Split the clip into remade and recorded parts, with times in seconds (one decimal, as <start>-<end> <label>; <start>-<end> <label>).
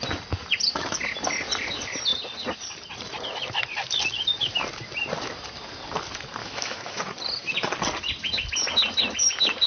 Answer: 0.0-6.4 recorded; 6.4-7.0 remade; 7.0-9.7 recorded